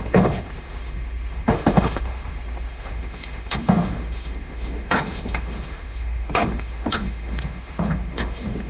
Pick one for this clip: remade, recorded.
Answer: remade